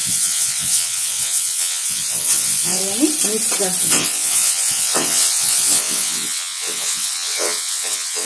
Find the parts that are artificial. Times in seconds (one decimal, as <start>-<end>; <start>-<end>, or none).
0.0-2.8; 3.8-8.3